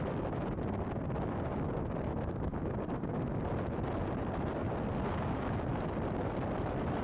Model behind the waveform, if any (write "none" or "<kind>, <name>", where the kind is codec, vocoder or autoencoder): none